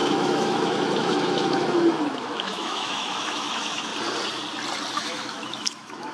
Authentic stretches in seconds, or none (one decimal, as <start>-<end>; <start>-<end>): 3.9-4.9